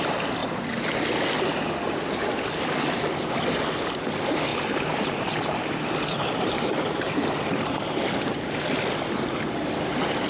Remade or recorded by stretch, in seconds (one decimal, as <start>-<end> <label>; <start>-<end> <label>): 0.0-4.5 recorded; 4.5-8.7 remade; 8.7-10.3 recorded